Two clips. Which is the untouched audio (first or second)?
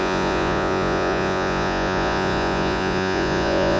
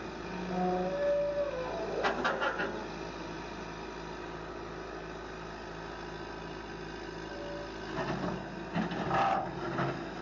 second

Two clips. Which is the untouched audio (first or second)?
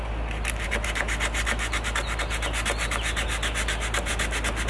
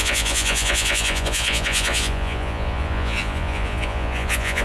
first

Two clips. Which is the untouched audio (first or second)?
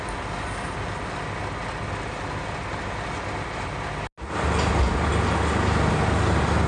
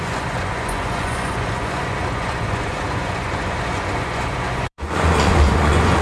first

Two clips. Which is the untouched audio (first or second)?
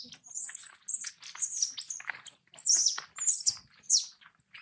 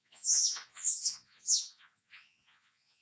first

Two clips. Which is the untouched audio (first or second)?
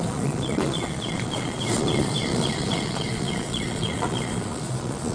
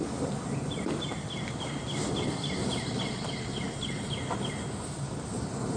second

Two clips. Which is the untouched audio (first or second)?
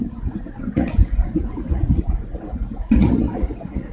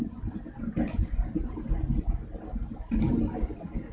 second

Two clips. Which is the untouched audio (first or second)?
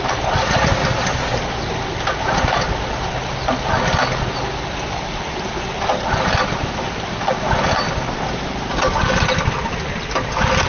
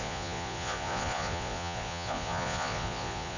first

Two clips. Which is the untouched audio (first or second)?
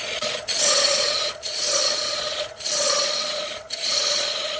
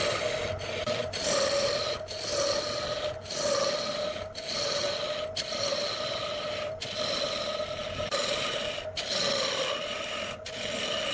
second